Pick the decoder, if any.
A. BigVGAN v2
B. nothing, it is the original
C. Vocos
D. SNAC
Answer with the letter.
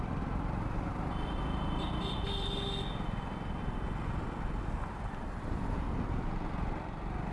B